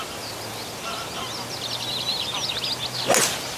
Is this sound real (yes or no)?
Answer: yes